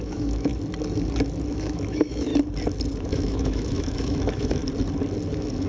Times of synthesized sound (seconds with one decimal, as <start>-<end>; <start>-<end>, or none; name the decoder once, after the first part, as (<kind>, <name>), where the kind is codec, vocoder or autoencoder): 0.0-0.5 (autoencoder, DAC-VAE); 1.5-2.3; 3.0-4.6; 5.3-5.7